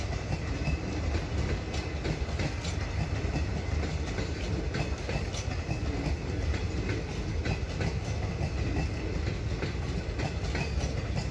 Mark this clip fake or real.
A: real